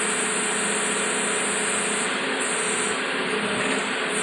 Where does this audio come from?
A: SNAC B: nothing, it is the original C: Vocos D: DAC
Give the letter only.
B